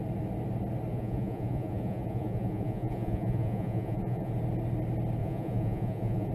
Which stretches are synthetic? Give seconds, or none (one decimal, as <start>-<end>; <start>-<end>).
0.9-4.3; 5.2-6.3